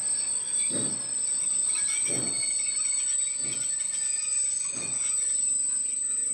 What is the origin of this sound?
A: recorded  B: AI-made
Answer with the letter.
A